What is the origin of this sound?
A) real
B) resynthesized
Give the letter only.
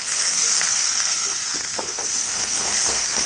B